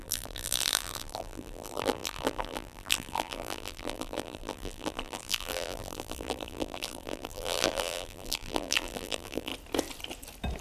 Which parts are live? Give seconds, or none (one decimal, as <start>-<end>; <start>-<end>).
9.5-10.6